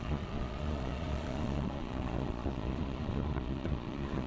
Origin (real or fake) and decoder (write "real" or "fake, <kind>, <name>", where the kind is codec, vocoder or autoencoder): fake, vocoder, Vocos